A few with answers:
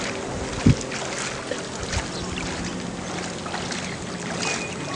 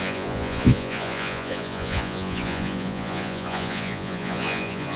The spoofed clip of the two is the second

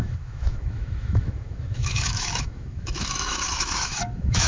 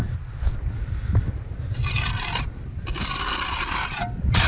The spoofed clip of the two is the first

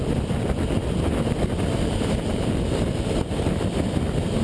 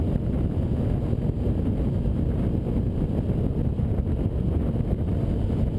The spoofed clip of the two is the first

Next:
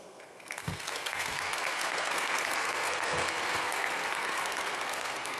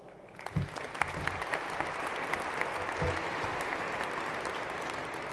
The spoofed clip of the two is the first